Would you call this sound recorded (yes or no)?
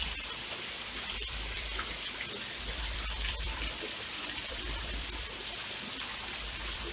no